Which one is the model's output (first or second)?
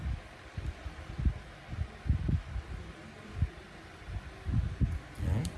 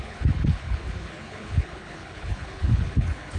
second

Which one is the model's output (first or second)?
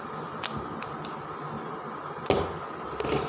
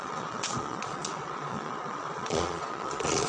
second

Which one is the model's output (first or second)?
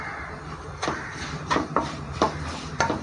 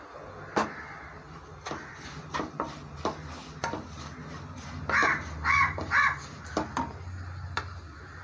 first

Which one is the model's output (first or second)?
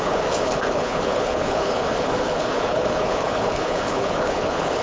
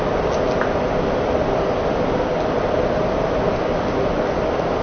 first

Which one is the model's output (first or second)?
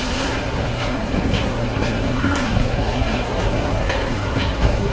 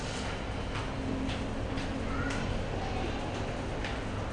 first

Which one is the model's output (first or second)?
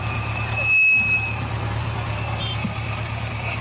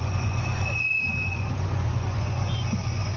second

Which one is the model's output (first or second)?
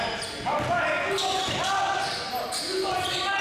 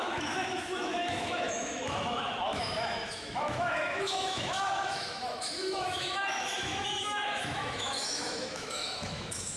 second